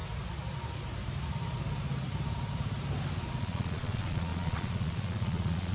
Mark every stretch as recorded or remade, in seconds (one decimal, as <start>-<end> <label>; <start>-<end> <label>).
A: 0.0-3.4 recorded; 3.4-5.7 remade